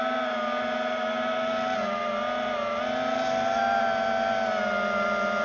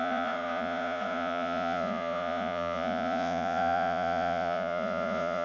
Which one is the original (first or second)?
first